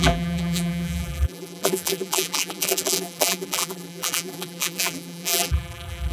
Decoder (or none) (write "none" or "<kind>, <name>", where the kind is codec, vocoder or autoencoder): vocoder, BigVGAN v2